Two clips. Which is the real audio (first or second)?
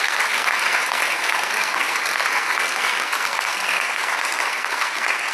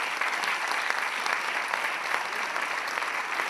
second